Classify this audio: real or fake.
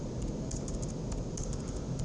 real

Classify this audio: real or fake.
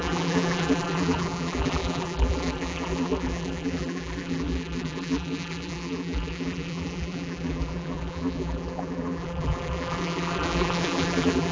fake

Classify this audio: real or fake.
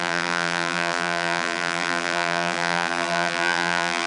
fake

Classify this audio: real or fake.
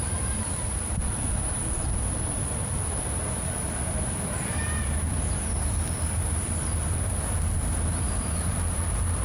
fake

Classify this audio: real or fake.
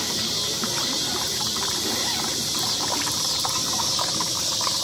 fake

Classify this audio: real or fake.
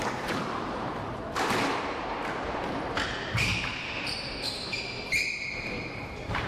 fake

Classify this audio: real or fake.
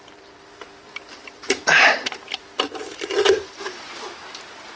fake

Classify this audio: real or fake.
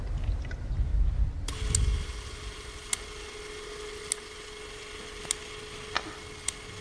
real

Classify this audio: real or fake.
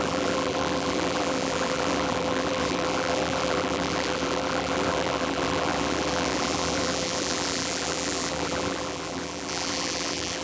fake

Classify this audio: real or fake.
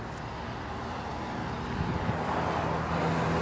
real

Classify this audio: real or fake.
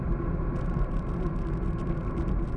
real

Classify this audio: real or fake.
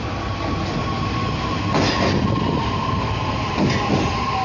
real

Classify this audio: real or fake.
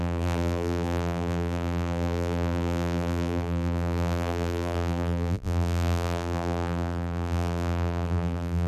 fake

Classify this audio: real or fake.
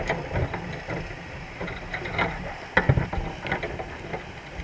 fake